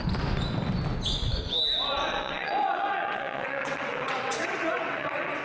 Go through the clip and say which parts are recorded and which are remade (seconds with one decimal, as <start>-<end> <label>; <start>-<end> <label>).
0.0-2.1 recorded; 2.1-5.4 remade